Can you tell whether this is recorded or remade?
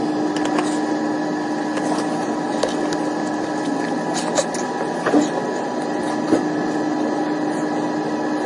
recorded